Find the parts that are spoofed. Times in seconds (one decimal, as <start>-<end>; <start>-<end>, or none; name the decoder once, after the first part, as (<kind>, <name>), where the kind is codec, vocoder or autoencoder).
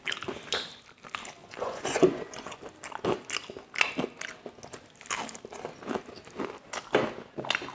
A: 1.4-2.6 (vocoder, Vocos)